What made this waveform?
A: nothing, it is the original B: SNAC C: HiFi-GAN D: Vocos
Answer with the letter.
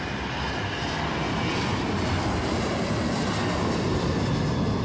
A